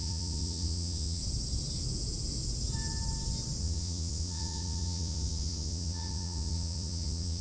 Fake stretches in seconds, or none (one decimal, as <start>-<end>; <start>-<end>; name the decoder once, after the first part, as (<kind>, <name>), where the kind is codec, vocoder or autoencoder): 0.0-1.2 (vocoder, Vocos); 3.6-7.4